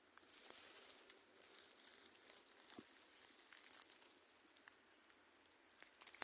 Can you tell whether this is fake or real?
fake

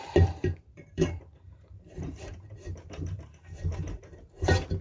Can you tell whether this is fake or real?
fake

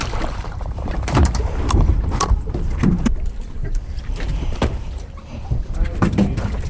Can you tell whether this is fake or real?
fake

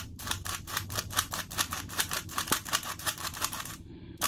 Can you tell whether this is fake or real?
fake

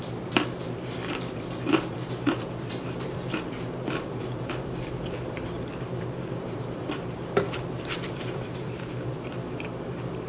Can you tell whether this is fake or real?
fake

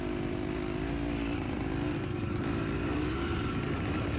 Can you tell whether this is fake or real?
fake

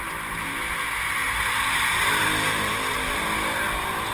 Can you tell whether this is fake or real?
real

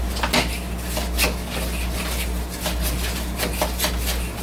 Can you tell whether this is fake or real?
real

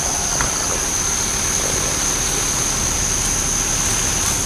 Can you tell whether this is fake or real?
real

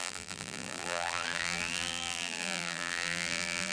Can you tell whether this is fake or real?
fake